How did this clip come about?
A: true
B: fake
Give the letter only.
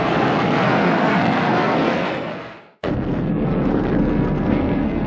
B